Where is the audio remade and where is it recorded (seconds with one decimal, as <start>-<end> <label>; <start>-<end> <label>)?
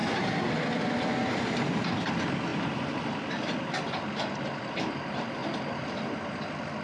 0.0-2.1 remade; 2.1-2.5 recorded; 2.5-4.8 remade; 4.8-5.4 recorded; 5.4-6.2 remade; 6.2-6.8 recorded